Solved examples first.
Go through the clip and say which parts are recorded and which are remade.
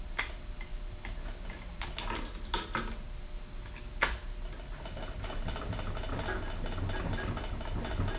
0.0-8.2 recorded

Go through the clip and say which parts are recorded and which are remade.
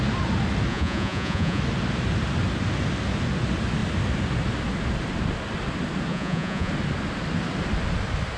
0.0-0.7 recorded; 0.7-1.6 remade; 1.6-6.1 recorded; 6.1-6.7 remade; 6.7-8.4 recorded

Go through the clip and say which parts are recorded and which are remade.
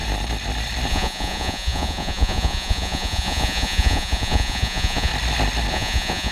0.0-0.9 recorded; 0.9-5.1 remade; 5.1-5.7 recorded; 5.7-6.3 remade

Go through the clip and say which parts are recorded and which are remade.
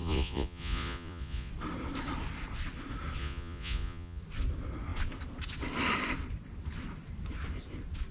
0.0-1.5 remade; 1.5-3.2 recorded; 3.2-4.2 remade; 4.2-8.1 recorded